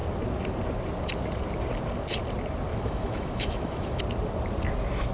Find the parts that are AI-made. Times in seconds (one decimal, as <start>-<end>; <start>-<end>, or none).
2.7-4.0